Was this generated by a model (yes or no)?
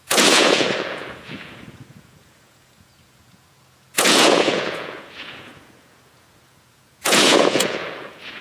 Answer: yes